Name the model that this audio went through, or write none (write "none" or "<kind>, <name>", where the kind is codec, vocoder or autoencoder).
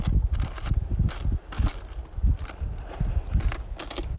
none